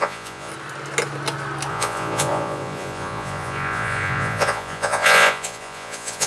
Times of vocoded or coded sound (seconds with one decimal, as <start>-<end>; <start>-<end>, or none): 0.0-0.5; 1.7-6.3